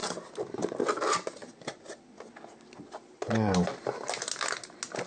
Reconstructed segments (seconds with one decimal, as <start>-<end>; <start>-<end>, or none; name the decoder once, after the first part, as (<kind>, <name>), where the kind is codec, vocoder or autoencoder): none